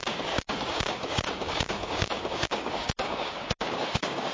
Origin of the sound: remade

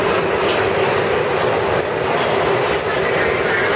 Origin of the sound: recorded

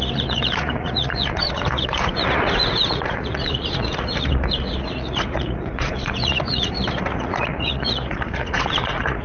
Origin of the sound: remade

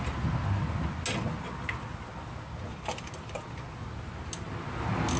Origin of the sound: recorded